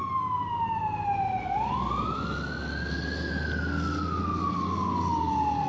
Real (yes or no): yes